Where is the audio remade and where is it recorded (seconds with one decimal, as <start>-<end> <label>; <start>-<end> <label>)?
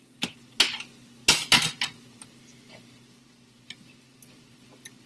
0.0-5.1 recorded